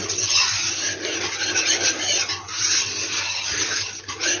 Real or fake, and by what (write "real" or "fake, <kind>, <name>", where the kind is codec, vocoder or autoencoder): real